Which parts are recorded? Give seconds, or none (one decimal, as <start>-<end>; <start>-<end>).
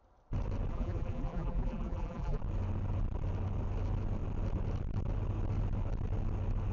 0.0-0.7; 2.4-6.7